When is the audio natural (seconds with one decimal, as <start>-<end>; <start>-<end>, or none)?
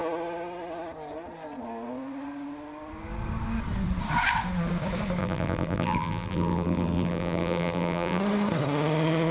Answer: 0.0-5.2; 8.2-9.3